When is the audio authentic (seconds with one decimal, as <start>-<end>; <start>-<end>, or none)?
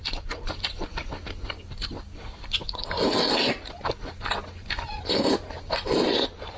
0.0-6.6